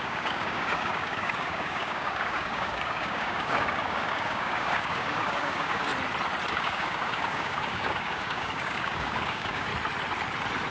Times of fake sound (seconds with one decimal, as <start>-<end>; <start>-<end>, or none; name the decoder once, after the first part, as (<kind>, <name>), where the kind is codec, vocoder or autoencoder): 0.0-5.9 (codec, DAC); 6.5-9.7